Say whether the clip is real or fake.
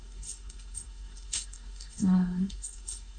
fake